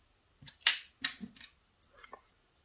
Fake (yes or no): no